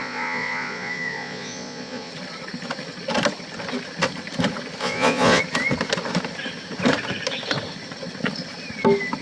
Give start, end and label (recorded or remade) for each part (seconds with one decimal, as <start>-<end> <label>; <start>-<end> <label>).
0.0-2.1 remade; 2.1-4.8 recorded; 4.8-5.4 remade; 5.4-9.2 recorded